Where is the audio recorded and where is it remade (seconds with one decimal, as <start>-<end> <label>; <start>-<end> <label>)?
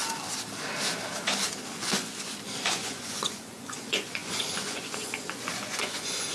0.0-1.7 recorded; 1.7-6.3 remade